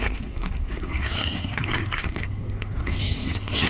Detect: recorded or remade remade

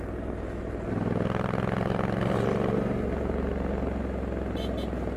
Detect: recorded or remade recorded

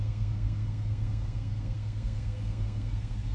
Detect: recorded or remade remade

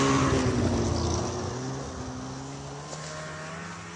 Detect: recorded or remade recorded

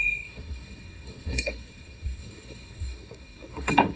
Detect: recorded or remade remade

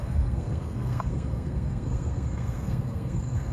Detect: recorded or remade remade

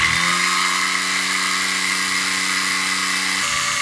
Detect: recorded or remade recorded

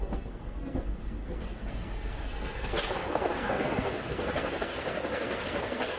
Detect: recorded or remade remade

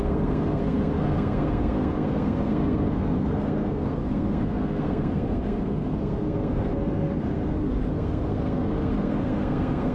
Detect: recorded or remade remade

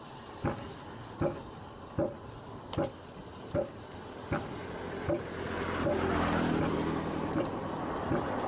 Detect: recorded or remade recorded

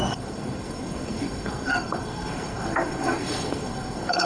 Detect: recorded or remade remade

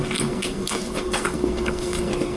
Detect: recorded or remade remade